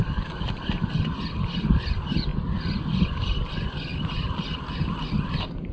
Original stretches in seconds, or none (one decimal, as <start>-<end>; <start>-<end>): 0.0-5.7

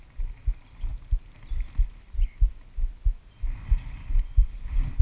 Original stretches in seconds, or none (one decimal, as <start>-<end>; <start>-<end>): 0.0-5.0

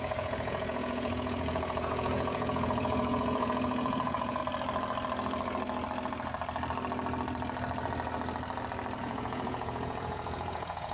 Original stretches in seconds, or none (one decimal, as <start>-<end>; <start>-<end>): 4.4-9.0

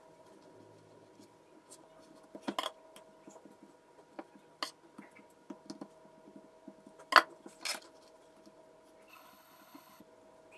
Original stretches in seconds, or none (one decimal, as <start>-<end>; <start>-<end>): 0.0-9.1; 10.0-10.6